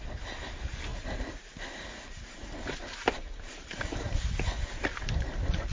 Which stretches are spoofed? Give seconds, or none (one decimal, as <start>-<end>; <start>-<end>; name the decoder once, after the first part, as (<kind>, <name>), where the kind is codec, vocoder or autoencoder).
0.9-4.3 (vocoder, BigVGAN v2)